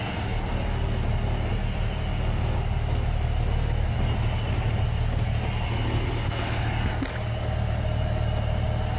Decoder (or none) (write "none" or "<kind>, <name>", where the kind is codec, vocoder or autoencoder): none